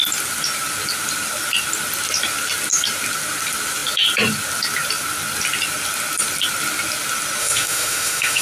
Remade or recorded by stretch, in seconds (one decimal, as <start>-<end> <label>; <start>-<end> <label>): 0.0-7.4 recorded; 7.4-8.4 remade